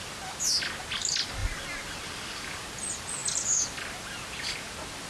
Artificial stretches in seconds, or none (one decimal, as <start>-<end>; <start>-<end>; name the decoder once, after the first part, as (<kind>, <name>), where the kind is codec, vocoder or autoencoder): 1.4-2.0 (vocoder, BigVGAN v2)